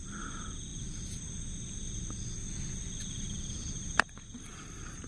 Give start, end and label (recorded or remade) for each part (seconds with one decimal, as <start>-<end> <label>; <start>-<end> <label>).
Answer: 0.0-5.1 recorded